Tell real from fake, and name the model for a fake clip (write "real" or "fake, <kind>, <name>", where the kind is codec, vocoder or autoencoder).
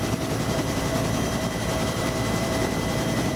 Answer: fake, vocoder, BigVGAN v2